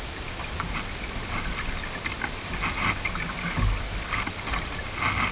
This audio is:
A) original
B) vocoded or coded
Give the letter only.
A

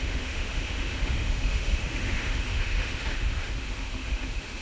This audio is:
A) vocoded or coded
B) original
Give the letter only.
A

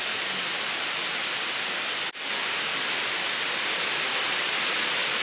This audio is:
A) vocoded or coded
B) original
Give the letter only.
B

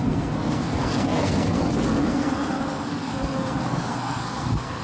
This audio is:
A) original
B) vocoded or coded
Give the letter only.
B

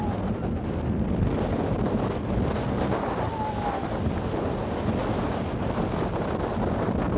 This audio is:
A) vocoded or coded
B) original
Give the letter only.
B